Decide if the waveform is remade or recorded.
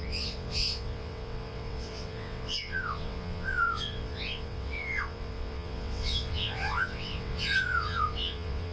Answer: remade